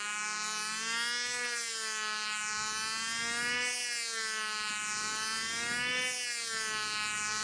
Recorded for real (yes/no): yes